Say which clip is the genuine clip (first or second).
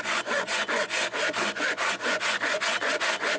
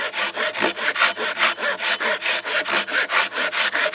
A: second